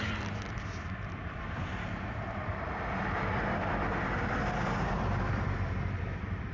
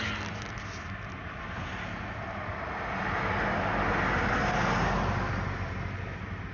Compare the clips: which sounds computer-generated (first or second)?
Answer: first